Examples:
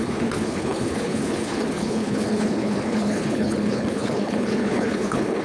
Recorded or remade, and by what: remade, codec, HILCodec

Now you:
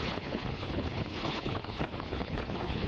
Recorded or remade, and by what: remade, codec, HILCodec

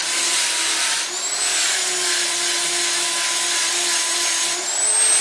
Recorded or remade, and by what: recorded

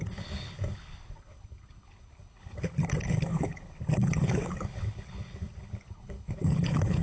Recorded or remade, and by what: remade, codec, HILCodec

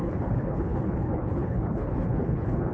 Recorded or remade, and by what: remade, codec, HILCodec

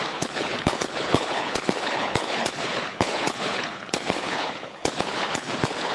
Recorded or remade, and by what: remade, codec, HILCodec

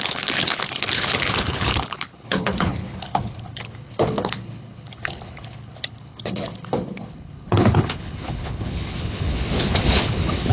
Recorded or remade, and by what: remade, codec, HILCodec